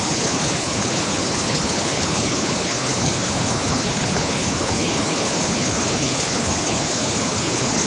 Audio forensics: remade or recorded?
remade